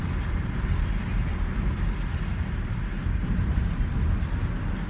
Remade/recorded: recorded